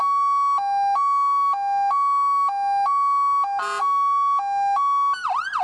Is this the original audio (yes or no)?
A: yes